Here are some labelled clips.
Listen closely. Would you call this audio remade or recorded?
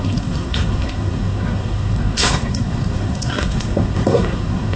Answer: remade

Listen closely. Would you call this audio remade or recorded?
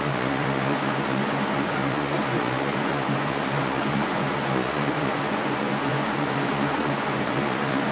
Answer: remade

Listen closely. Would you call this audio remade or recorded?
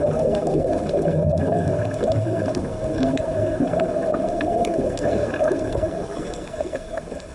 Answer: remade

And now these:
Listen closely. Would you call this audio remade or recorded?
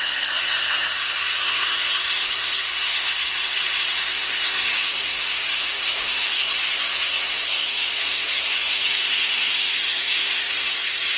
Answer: remade